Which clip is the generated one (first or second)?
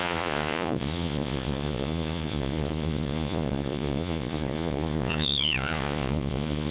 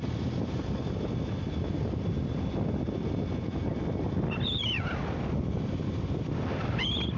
first